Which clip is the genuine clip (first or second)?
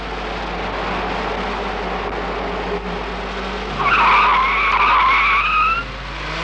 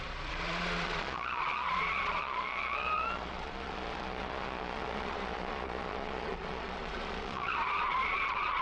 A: first